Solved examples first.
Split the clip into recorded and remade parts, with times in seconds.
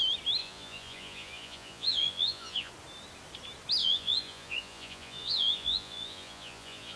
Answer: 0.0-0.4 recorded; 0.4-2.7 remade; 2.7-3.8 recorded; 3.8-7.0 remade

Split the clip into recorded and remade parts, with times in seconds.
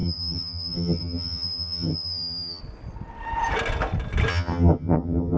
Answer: 0.0-2.6 remade; 2.6-4.3 recorded; 4.3-5.4 remade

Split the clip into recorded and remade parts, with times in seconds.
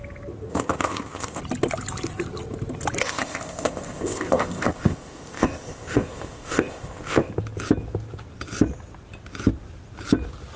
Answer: 0.0-0.5 recorded; 0.5-1.4 remade; 1.4-3.0 recorded; 3.0-7.3 remade; 7.3-10.6 recorded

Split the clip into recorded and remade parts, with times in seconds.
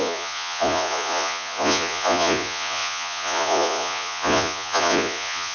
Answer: 0.0-5.5 remade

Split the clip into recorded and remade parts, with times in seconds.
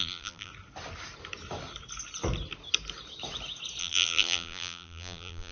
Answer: 0.0-0.5 remade; 0.5-3.8 recorded; 3.8-5.5 remade